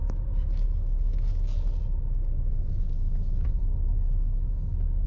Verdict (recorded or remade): recorded